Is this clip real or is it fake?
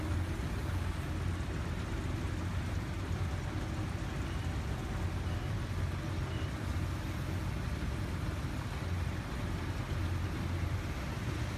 real